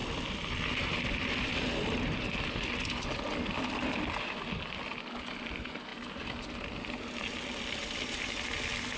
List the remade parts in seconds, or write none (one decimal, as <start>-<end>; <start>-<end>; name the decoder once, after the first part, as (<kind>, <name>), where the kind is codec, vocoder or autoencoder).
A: none